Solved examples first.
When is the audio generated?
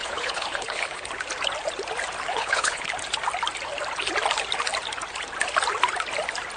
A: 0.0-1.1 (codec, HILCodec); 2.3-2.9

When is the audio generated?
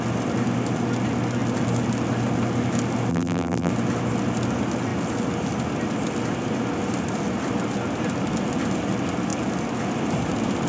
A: 3.1-3.7 (vocoder, BigVGAN v2)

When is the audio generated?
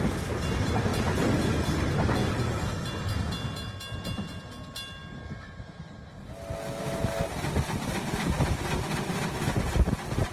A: none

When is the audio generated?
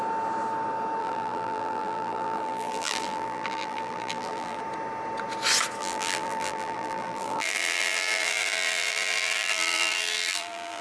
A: 1.0-4.6 (vocoder, BigVGAN v2); 5.8-10.8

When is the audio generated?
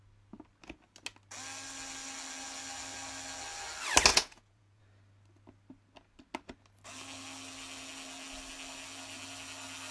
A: 4.1-4.8 (vocoder, Vocos)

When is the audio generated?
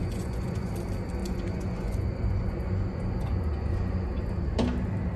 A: 0.0-0.7 (vocoder, Vocos); 1.2-4.3